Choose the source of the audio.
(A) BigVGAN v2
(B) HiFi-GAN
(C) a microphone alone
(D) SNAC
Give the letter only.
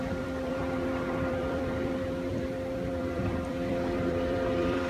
A